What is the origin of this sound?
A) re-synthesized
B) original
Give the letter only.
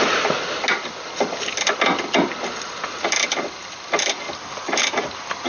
B